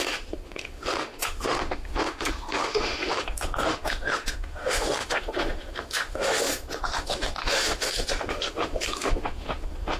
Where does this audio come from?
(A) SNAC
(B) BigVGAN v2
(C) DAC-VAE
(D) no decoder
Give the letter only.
C